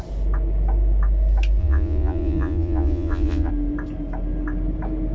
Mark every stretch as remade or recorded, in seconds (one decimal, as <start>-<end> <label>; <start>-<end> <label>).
0.0-1.6 recorded; 1.6-3.5 remade; 3.5-5.1 recorded